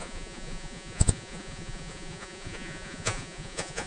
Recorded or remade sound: remade